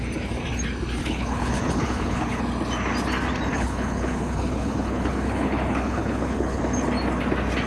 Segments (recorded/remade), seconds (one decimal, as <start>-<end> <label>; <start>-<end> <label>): 0.0-1.0 recorded; 1.0-2.4 remade; 2.4-3.5 recorded; 3.5-6.6 remade; 6.6-7.7 recorded